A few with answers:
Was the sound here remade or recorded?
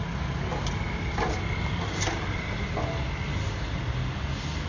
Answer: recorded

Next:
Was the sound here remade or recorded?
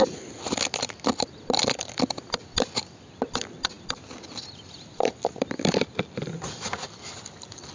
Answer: recorded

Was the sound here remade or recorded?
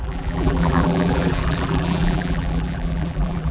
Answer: remade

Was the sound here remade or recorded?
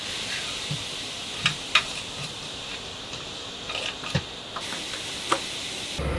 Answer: remade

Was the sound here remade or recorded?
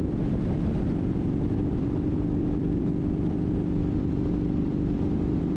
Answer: remade